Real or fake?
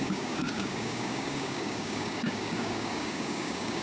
fake